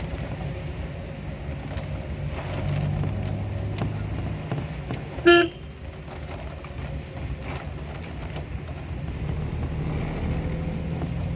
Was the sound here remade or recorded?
recorded